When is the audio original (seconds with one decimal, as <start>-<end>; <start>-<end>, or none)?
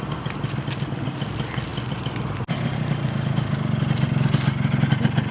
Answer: 0.0-5.3